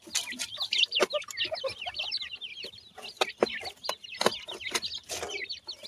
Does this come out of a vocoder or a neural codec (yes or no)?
no